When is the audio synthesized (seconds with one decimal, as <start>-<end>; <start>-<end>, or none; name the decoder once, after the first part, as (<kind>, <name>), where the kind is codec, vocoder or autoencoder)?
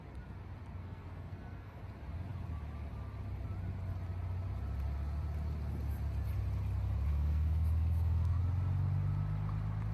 0.8-1.8 (codec, SNAC); 7.1-8.4